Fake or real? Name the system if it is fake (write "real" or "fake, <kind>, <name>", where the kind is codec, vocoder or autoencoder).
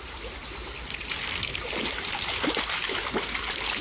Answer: fake, vocoder, BigVGAN v2